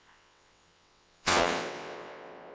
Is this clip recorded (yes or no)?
no